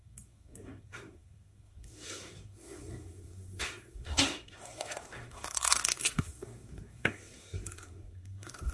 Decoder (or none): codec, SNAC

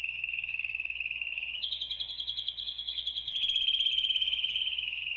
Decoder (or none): codec, DAC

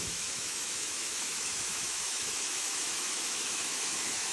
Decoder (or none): autoencoder, DAC-VAE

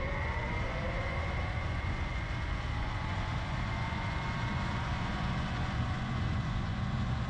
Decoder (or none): vocoder, Vocos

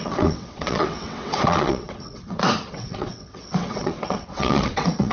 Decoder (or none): vocoder, WaveNeXt